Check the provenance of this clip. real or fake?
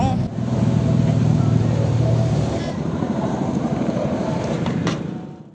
fake